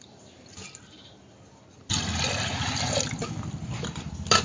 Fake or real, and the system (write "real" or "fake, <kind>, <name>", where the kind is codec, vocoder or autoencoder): real